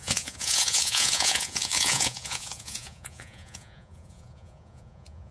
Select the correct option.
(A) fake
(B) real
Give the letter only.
A